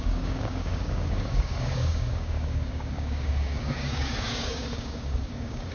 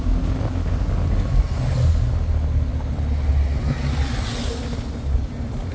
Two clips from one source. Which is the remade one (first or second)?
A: first